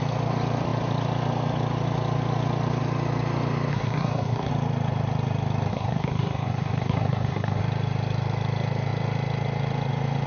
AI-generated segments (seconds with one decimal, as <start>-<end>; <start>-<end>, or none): 3.7-4.5; 5.7-7.6